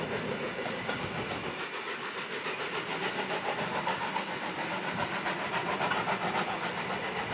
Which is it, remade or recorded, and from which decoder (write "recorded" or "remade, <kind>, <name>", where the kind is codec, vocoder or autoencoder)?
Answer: recorded